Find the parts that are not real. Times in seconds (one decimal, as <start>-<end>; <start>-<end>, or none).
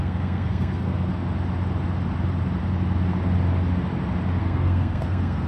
0.0-1.1; 4.4-5.5